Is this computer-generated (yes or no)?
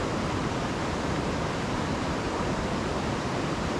no